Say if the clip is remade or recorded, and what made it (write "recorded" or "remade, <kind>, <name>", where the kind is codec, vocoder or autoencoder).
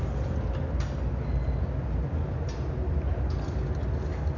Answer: recorded